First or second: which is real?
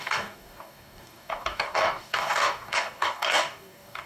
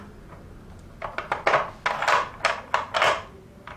second